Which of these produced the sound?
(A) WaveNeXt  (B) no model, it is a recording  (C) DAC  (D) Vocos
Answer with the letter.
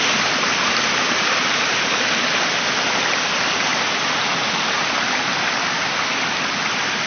B